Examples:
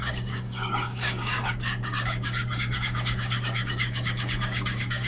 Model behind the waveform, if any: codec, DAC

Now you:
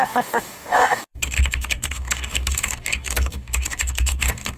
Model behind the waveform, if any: codec, DAC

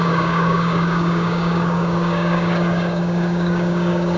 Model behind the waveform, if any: codec, DAC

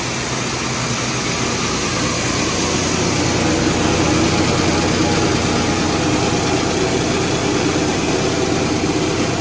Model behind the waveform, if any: none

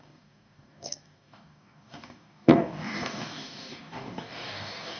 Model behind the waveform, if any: codec, DAC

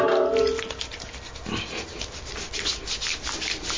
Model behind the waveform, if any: none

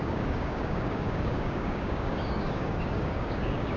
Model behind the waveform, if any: codec, DAC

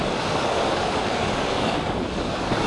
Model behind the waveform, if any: codec, DAC